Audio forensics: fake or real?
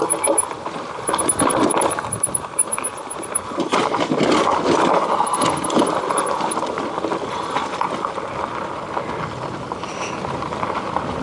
real